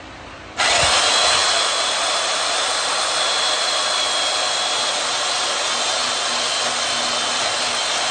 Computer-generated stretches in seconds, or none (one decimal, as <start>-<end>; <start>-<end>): none